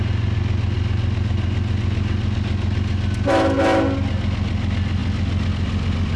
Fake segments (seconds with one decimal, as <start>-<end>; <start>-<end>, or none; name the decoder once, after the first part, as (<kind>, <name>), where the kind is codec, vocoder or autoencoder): none